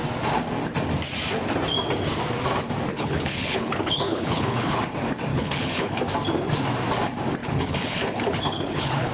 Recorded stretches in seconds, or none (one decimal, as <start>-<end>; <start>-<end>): 0.0-2.9; 4.8-5.3; 6.0-7.4